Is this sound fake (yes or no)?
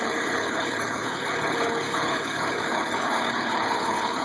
yes